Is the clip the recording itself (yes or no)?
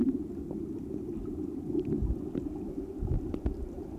yes